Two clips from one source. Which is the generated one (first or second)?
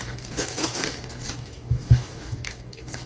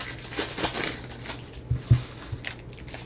first